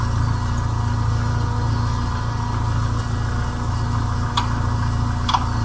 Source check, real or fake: real